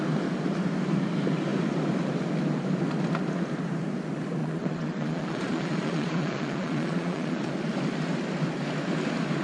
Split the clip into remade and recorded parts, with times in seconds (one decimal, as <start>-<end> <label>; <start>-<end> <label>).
0.0-4.4 recorded; 4.4-7.5 remade; 7.5-9.4 recorded